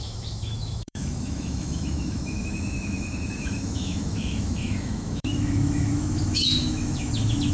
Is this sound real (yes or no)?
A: no